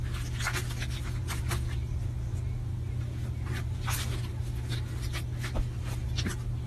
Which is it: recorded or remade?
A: recorded